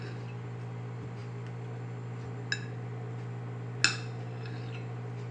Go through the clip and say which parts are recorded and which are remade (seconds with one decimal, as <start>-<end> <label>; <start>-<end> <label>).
0.0-5.3 recorded